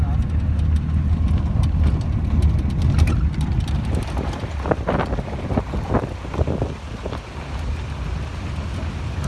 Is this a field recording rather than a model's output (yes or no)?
yes